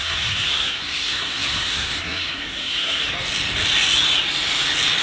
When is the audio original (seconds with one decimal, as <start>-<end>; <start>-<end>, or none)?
3.0-5.0